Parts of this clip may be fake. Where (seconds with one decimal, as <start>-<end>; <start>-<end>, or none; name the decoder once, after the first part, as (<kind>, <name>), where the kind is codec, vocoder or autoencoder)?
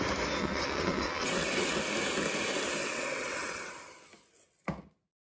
0.4-1.8 (vocoder, WaveNeXt); 2.8-3.7